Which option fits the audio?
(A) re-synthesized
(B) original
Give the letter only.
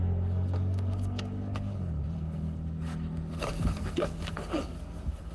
A